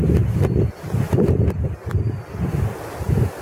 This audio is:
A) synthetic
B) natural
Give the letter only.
B